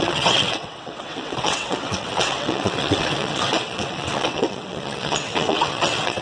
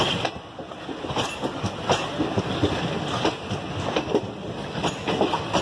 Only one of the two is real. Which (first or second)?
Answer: second